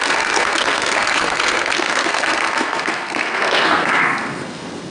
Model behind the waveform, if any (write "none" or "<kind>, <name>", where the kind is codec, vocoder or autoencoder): codec, SNAC